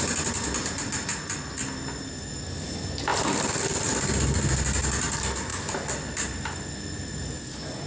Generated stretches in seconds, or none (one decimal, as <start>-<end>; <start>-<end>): 3.1-3.8; 5.5-6.7